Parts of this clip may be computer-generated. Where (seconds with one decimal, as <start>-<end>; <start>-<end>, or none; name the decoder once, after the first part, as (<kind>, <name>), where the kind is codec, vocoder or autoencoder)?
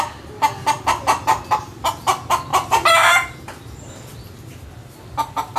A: 2.5-5.6 (vocoder, BigVGAN v2)